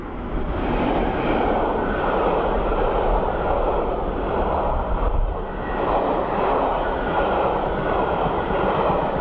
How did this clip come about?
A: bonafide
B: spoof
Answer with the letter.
A